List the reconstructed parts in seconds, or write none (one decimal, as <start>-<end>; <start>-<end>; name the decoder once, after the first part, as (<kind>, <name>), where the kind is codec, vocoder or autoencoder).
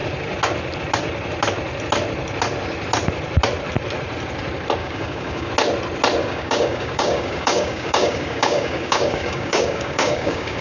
4.8-5.5 (codec, DAC); 6.2-10.6